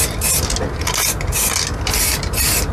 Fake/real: real